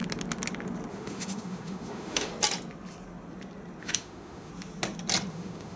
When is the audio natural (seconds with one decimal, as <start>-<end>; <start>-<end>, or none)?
0.0-0.9; 2.3-3.8; 4.5-5.3